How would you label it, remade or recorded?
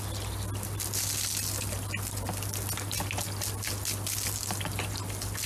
recorded